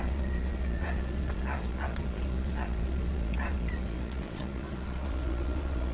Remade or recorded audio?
remade